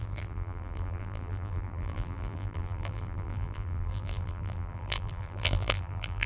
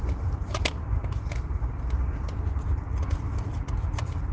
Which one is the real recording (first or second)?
second